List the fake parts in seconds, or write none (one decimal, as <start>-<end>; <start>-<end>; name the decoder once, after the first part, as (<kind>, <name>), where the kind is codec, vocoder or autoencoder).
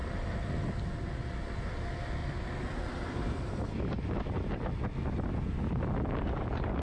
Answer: none